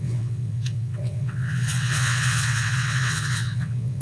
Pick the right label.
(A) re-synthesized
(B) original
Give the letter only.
A